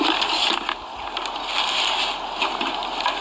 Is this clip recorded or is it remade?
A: recorded